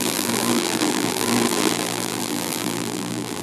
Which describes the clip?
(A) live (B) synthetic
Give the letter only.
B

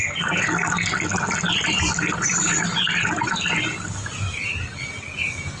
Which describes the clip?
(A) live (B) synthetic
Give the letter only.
A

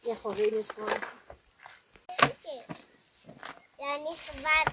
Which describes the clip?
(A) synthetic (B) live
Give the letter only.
B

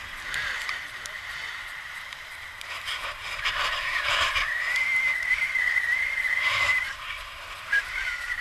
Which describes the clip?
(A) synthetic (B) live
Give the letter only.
A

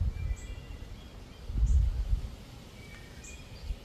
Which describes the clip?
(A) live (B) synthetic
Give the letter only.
A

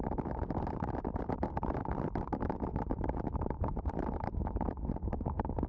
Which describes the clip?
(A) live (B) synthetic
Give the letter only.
B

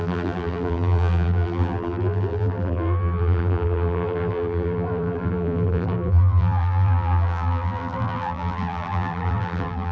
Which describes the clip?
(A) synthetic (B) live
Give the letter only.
A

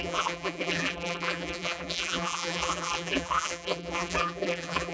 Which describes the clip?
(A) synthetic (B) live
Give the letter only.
A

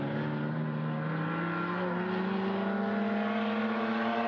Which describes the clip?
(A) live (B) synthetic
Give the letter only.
A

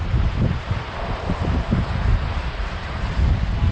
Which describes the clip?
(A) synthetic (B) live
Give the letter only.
A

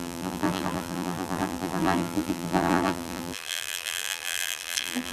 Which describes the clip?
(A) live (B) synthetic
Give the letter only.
B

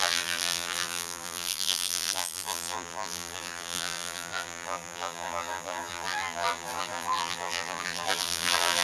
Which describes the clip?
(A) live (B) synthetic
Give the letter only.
B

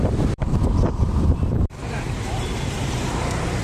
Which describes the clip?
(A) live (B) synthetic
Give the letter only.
B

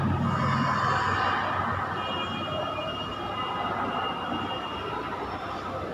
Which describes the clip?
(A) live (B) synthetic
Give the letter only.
A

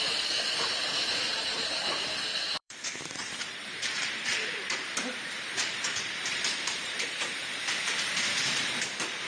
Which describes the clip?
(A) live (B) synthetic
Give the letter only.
B